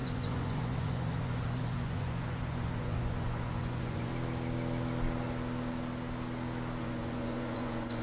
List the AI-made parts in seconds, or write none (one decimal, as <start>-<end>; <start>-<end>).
0.0-4.1; 6.8-8.0

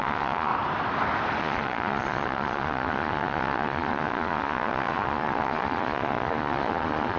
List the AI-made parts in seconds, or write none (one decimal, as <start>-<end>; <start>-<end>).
0.0-0.5; 1.4-7.2

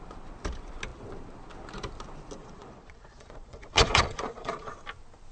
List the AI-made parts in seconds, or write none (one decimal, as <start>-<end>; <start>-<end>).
2.4-4.7

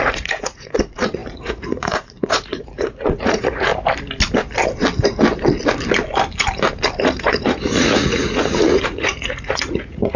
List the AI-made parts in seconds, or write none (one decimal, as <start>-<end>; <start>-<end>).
0.0-3.7; 7.0-10.2